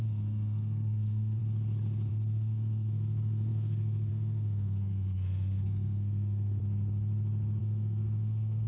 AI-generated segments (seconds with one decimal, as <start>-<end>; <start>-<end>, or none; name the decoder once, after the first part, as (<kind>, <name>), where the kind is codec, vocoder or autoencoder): 0.0-1.4 (codec, SNAC); 2.1-6.6; 7.6-8.7